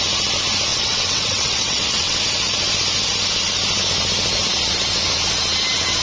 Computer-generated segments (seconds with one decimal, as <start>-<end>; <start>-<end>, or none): 0.7-2.2